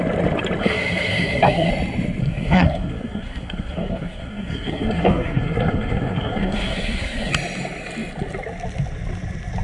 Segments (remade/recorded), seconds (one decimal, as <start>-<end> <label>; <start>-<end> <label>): 0.0-0.6 recorded; 0.6-1.7 remade; 1.7-2.2 recorded; 2.2-7.3 remade; 7.3-9.6 recorded